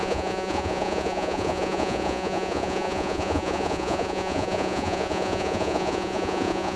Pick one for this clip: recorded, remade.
remade